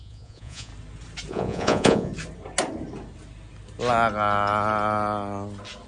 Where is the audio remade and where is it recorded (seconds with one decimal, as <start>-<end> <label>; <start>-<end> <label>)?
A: 0.0-0.7 remade; 0.7-1.3 recorded; 1.3-2.1 remade; 2.1-5.9 recorded